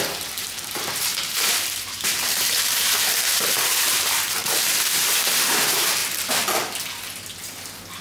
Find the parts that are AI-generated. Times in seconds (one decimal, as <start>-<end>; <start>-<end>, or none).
0.0-6.0